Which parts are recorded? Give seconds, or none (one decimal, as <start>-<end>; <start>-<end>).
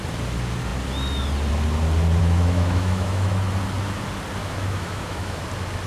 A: 0.0-2.2; 3.5-4.4; 5.4-5.9